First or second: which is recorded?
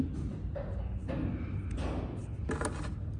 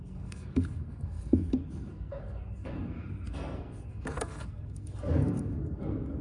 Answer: first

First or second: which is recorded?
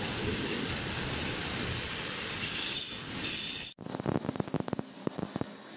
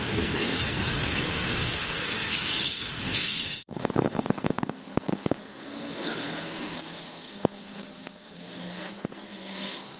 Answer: first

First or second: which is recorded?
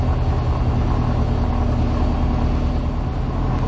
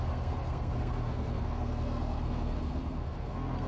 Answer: first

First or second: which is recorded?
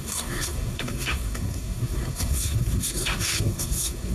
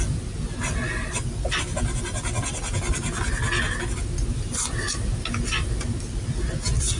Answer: second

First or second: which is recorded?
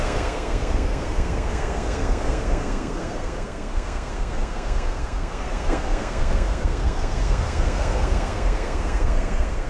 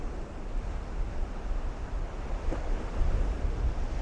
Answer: second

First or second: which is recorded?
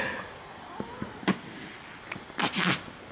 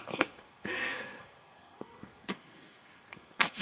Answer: first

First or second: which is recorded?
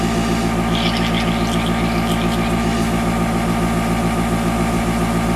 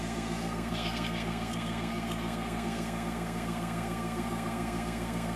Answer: first